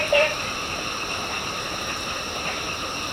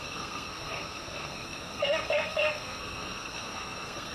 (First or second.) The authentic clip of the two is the first